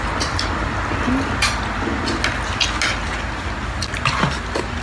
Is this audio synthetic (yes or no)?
no